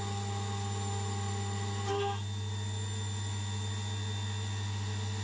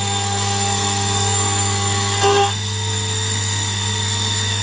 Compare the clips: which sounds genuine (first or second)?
first